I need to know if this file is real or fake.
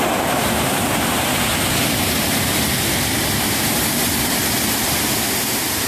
fake